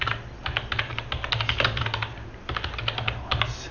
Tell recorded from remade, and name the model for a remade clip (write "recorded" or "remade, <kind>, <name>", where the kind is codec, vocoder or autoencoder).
recorded